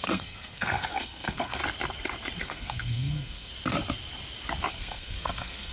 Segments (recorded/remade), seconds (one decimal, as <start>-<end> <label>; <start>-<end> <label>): 0.0-1.6 remade; 1.6-2.4 recorded; 2.4-3.5 remade; 3.5-4.7 recorded; 4.7-5.7 remade